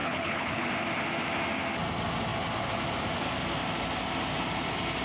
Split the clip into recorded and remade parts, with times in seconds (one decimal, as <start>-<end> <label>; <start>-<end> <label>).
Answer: 0.0-0.7 remade; 0.7-5.0 recorded